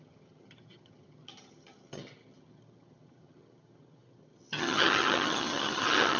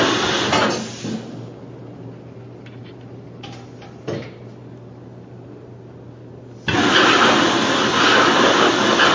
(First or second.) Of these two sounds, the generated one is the first